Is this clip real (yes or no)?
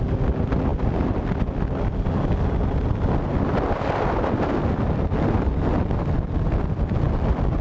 yes